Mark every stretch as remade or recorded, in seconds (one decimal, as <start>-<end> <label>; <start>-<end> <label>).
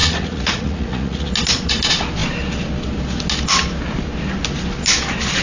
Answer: 0.0-1.3 remade; 1.3-5.4 recorded